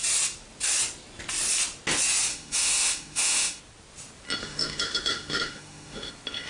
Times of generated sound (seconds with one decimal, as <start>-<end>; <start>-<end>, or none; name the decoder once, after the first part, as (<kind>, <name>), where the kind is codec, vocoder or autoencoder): 2.3-3.6 (autoencoder, DAC-VAE); 4.4-6.1